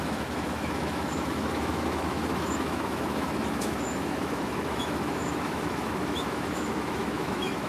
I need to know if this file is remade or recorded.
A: remade